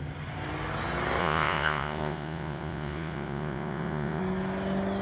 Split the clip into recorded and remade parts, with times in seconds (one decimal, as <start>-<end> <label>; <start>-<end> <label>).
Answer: 0.0-1.2 recorded; 1.2-4.2 remade; 4.2-5.0 recorded